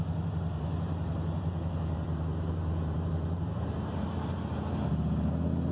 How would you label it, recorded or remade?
remade